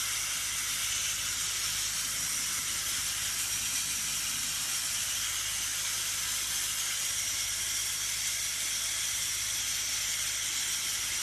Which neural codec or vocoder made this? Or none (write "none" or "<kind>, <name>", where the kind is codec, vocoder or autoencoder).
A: none